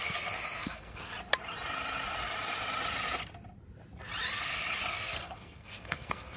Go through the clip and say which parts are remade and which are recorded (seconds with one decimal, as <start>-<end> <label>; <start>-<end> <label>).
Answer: 0.0-1.1 remade; 1.1-4.9 recorded; 4.9-6.4 remade